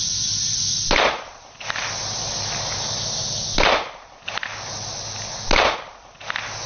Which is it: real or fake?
real